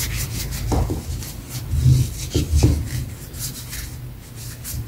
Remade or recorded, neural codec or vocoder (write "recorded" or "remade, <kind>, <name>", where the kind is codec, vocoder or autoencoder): recorded